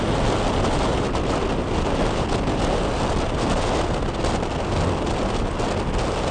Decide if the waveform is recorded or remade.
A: recorded